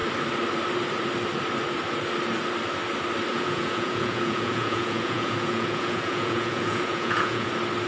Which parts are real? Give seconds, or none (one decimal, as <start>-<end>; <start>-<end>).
0.0-3.3; 7.5-7.9